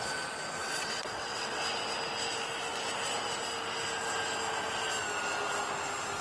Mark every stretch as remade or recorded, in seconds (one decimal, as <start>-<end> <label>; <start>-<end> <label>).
0.0-0.6 recorded; 0.6-1.6 remade; 1.6-6.2 recorded